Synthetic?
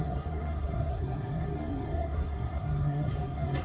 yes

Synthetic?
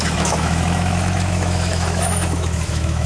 yes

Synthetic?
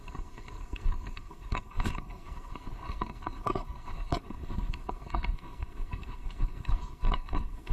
yes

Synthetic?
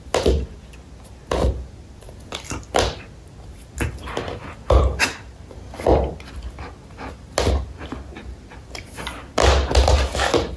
no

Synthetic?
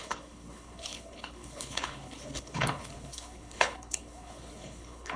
yes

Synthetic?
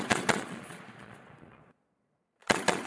yes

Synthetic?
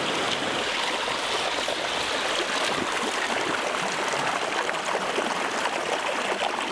no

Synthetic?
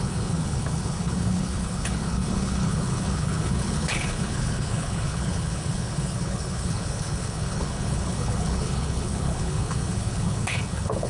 yes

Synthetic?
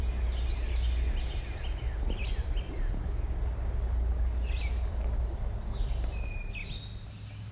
no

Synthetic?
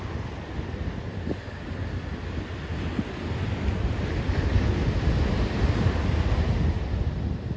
no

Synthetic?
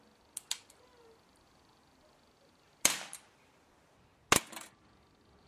no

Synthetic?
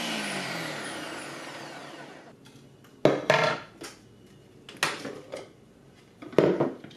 no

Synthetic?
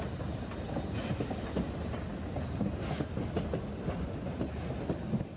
no